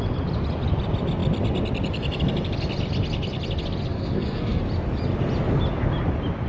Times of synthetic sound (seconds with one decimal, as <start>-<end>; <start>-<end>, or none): 3.9-4.6